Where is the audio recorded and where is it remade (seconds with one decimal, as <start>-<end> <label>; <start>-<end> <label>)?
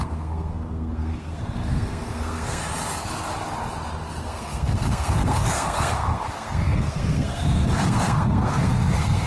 0.0-2.6 remade; 2.6-4.1 recorded; 4.1-9.3 remade